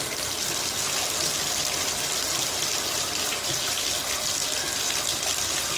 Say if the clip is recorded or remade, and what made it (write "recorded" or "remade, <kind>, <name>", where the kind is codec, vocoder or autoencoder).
recorded